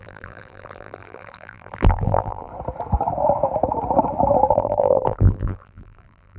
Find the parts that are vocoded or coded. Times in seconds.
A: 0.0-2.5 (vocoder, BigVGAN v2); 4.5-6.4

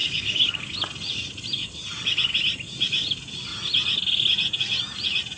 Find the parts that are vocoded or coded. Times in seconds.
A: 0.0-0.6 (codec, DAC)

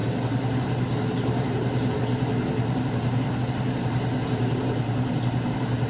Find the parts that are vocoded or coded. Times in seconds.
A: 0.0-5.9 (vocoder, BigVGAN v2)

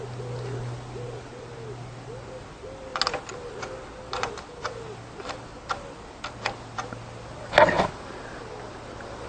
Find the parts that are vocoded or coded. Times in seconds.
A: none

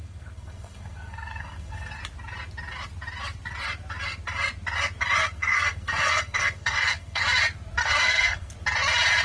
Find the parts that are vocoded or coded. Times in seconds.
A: 0.0-2.0 (codec, SNAC); 5.2-7.2; 7.8-8.5

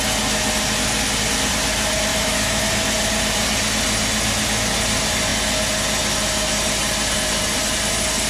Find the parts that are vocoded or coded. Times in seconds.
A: 2.1-2.6 (autoencoder, DAC-VAE)